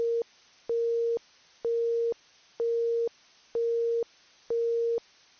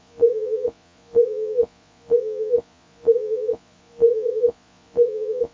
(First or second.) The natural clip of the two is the first